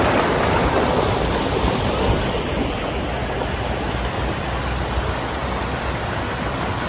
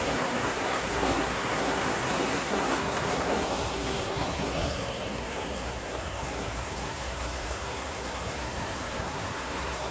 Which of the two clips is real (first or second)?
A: first